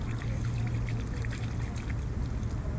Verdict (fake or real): real